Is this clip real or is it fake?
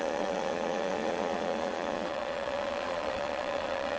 fake